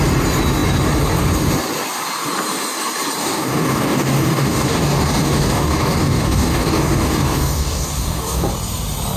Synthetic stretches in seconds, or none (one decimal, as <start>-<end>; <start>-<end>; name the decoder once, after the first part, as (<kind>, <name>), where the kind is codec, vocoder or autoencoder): 3.2-8.5 (codec, DAC)